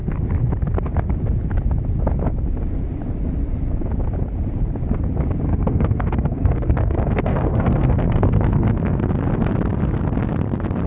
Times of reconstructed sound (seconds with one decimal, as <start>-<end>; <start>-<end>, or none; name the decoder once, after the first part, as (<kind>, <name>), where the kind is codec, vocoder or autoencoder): 5.5-9.1 (codec, SNAC)